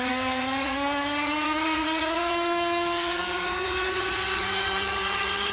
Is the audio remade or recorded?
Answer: remade